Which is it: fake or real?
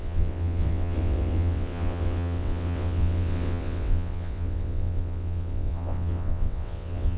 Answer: fake